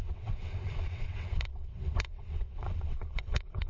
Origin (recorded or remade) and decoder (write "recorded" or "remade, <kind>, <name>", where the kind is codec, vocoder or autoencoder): remade, vocoder, WaveNeXt